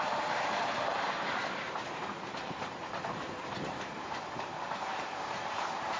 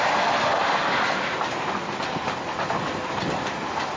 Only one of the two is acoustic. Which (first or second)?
second